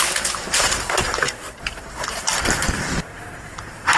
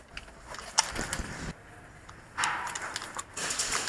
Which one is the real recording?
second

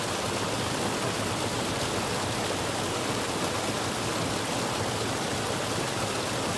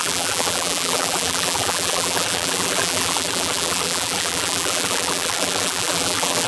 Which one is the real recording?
first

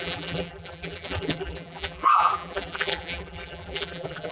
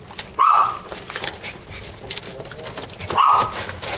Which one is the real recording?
second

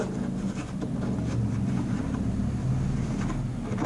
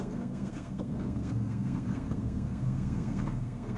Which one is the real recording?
first